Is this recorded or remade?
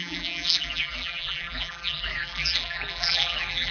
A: remade